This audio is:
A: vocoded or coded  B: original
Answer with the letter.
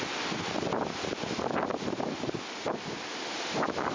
B